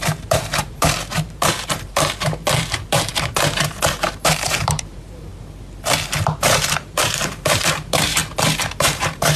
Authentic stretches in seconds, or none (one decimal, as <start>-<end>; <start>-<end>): 5.3-6.4; 8.2-8.8